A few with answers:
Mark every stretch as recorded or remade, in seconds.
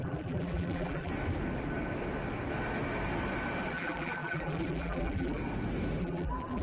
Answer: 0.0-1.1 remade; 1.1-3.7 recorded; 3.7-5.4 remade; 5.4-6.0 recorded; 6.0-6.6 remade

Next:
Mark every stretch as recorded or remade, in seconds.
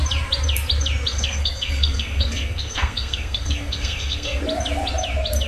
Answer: 0.0-1.1 recorded; 1.1-4.4 remade; 4.4-5.5 recorded